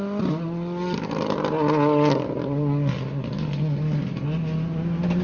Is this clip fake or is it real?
real